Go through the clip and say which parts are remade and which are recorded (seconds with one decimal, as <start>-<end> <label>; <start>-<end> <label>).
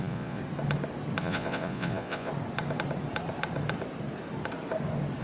0.0-0.4 remade; 0.4-1.2 recorded; 1.2-2.3 remade; 2.3-5.2 recorded